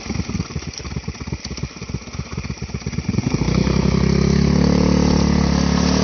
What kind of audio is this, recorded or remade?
recorded